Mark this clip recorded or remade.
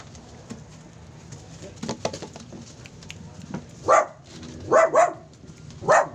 recorded